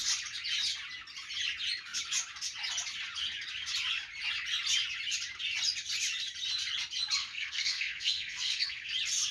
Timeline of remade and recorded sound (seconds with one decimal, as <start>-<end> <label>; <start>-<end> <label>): 0.0-7.2 recorded; 7.2-8.9 remade; 8.9-9.3 recorded